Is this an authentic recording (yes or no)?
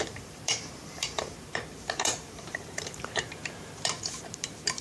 no